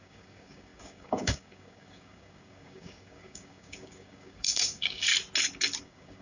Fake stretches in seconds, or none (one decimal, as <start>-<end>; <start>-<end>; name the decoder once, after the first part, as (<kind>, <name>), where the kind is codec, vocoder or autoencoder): 0.0-5.1 (codec, DAC); 5.8-6.2